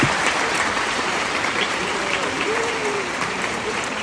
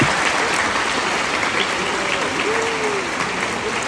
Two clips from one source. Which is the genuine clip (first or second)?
second